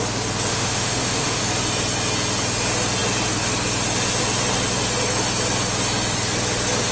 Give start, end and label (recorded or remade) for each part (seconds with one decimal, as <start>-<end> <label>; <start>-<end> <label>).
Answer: 0.0-0.5 recorded; 0.5-1.4 remade; 1.4-6.9 recorded

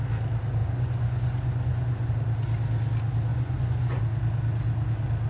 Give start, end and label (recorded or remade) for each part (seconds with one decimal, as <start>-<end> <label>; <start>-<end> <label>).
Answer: 0.0-0.6 recorded; 0.6-2.1 remade; 2.1-3.3 recorded; 3.3-4.0 remade; 4.0-5.3 recorded

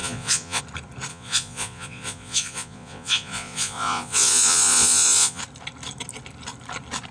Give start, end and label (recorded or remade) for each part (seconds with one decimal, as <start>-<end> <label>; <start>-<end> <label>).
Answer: 0.0-0.6 remade; 0.6-1.1 recorded; 1.1-5.4 remade; 5.4-7.1 recorded

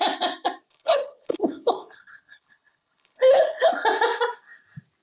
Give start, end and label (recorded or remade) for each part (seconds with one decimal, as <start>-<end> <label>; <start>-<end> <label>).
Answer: 0.0-0.7 recorded; 0.7-3.7 remade; 3.7-5.0 recorded

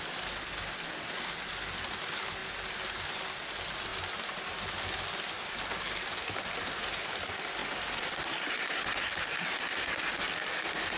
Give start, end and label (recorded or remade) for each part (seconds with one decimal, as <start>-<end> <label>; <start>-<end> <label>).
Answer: 0.0-11.0 recorded